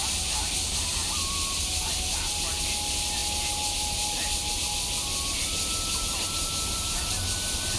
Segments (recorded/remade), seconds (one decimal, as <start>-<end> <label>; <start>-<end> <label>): 0.0-7.8 recorded